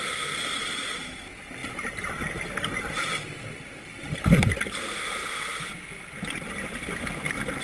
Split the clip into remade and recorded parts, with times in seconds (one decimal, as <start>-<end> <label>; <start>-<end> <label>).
0.0-1.6 recorded; 1.6-2.8 remade; 2.8-7.6 recorded